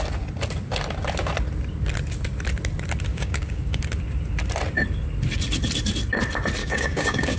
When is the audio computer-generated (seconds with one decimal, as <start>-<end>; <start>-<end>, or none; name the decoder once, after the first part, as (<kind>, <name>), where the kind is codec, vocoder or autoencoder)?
3.1-3.8 (codec, DAC); 6.6-7.4